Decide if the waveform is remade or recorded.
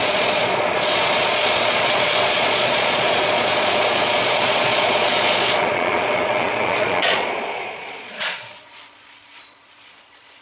remade